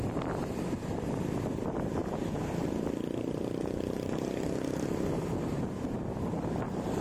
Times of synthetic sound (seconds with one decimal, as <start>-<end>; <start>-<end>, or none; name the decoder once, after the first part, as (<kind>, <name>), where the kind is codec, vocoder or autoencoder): none